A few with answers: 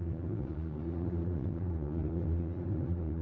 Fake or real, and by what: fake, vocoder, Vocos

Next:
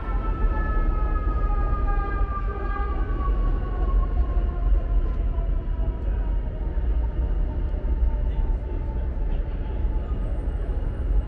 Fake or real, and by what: real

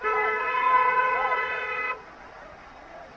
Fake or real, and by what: fake, vocoder, Vocos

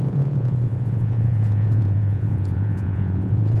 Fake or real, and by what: fake, vocoder, Vocos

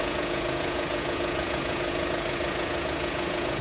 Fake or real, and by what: fake, vocoder, Vocos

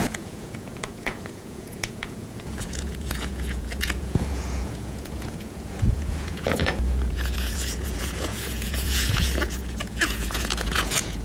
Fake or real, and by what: fake, vocoder, Vocos